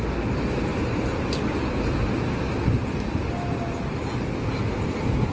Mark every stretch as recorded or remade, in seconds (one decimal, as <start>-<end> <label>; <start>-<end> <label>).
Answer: 0.0-5.3 recorded